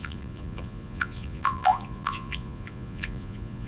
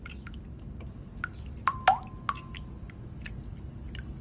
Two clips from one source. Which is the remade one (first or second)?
first